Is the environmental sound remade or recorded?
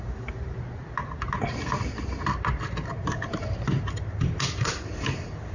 recorded